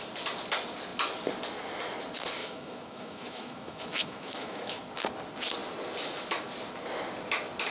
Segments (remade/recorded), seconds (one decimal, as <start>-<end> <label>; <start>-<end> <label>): 0.0-2.4 recorded; 2.4-4.8 remade; 4.8-7.7 recorded